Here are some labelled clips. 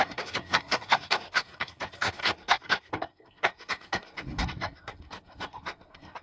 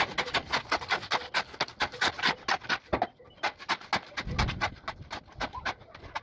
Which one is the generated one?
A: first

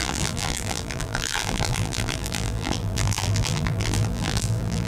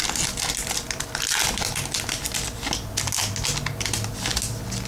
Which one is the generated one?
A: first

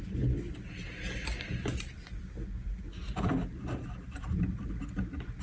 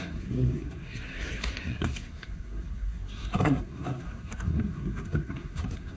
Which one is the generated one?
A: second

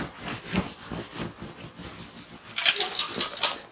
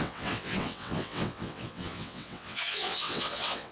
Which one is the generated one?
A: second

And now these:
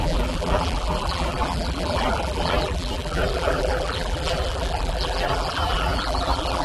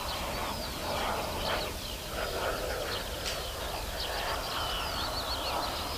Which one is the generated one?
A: first